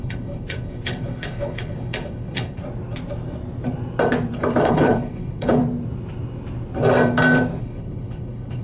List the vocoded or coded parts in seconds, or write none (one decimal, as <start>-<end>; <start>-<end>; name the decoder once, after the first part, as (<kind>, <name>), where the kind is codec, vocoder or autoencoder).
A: 0.0-2.6 (codec, HILCodec); 4.6-5.6; 7.6-8.6